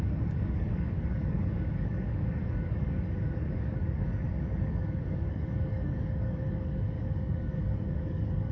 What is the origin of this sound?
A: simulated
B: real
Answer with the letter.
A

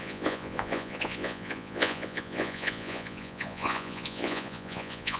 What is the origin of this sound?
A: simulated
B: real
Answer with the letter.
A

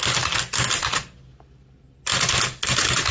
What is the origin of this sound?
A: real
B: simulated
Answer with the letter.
A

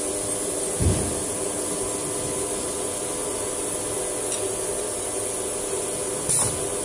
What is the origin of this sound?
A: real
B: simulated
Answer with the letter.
A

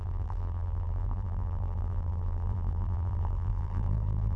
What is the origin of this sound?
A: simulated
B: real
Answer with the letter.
A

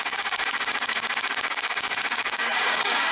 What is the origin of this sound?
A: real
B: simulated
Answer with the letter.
B